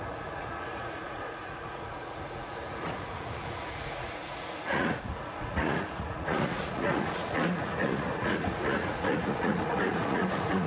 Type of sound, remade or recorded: remade